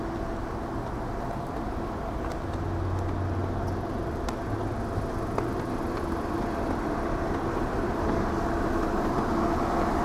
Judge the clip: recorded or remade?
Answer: recorded